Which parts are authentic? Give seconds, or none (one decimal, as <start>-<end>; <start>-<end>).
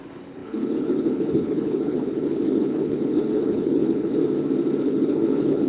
4.2-4.8